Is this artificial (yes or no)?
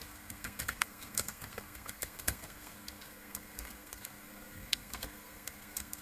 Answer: yes